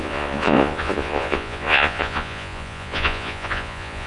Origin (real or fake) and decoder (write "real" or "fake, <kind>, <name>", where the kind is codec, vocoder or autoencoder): fake, vocoder, Vocos